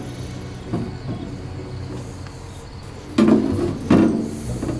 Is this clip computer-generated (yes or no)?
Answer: no